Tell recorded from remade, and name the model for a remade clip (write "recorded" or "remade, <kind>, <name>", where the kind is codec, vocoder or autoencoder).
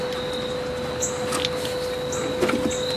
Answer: recorded